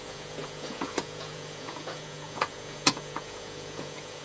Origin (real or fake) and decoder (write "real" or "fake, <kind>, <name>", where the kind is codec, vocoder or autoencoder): fake, vocoder, Vocos